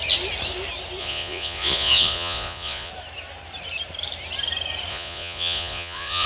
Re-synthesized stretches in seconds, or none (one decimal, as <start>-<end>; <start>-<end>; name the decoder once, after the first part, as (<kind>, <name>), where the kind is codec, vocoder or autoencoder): 1.0-2.9 (vocoder, Vocos); 4.9-6.3